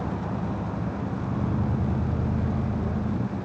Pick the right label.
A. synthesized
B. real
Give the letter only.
B